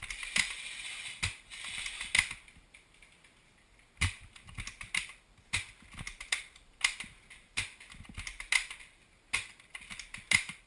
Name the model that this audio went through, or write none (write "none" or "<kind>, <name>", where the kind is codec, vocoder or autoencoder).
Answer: none